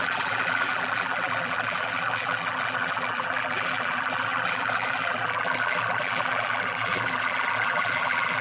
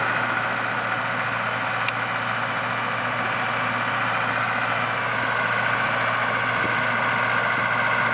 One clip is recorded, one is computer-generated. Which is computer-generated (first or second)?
first